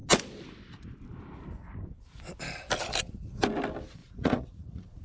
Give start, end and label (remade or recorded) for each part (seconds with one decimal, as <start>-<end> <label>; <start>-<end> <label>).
0.0-4.0 recorded; 4.0-5.0 remade